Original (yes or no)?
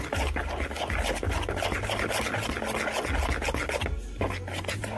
yes